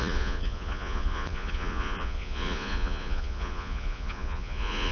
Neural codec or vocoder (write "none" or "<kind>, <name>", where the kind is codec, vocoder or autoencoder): vocoder, Vocos